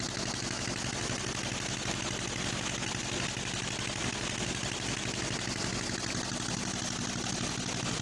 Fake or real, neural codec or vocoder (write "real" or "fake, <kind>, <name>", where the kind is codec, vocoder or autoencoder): real